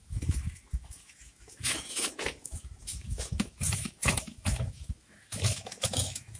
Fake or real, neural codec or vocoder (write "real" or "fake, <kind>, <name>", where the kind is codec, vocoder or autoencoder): fake, autoencoder, DAC-VAE